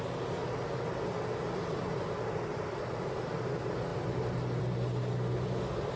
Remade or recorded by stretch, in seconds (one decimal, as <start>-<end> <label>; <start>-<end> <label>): 0.0-6.0 recorded